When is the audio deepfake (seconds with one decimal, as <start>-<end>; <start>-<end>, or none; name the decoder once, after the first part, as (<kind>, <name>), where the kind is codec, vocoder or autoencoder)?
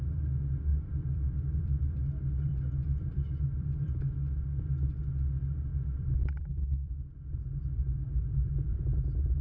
0.7-4.1 (vocoder, BigVGAN v2); 5.7-7.0; 8.3-8.8